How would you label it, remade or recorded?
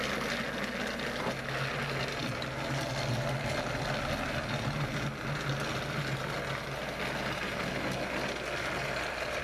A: recorded